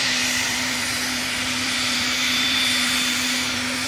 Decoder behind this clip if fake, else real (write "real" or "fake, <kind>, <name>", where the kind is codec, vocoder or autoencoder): fake, vocoder, BigVGAN v2